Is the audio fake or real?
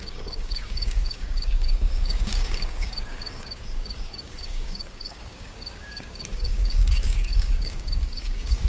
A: fake